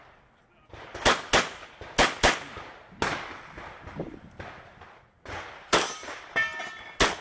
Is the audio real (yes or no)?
yes